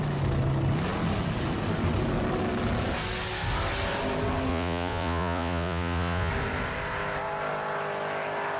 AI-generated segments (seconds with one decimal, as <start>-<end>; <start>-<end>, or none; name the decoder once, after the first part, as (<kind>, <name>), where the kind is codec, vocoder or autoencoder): 4.5-6.3 (vocoder, Vocos)